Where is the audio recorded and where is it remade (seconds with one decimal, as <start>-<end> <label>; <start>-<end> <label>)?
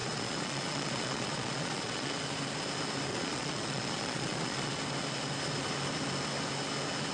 0.0-2.1 remade; 2.1-3.1 recorded; 3.1-4.7 remade; 4.7-7.1 recorded